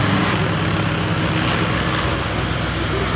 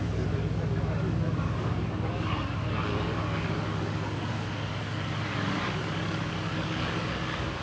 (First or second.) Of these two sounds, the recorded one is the first